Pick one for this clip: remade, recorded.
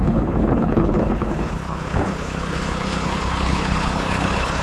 remade